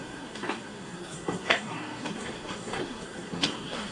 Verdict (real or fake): fake